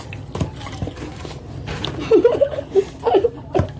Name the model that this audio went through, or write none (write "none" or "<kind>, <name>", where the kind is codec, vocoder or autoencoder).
none